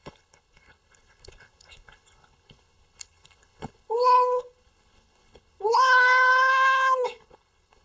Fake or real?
fake